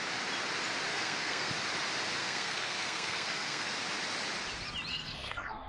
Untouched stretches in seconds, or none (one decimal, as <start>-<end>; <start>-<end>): 0.0-0.9; 1.5-2.2; 3.7-4.9